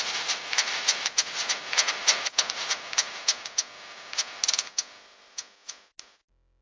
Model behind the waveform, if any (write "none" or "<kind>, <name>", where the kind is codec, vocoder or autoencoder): none